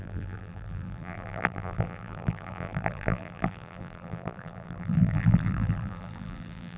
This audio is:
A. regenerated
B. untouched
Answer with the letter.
A